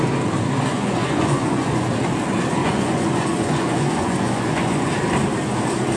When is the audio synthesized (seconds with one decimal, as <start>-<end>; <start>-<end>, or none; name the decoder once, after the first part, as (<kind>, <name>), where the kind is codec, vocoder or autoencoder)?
0.7-1.9 (vocoder, Vocos); 2.6-4.9